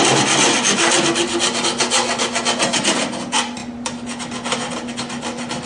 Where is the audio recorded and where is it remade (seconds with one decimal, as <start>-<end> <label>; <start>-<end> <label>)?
0.0-5.7 recorded